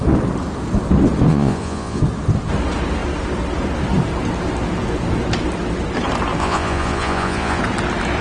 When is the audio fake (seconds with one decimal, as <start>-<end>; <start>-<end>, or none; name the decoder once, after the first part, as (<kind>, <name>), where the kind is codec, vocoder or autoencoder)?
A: 1.3-2.0 (vocoder, Vocos); 6.4-7.6